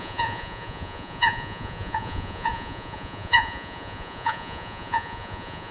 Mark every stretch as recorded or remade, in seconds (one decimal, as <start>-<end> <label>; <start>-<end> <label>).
0.0-5.7 remade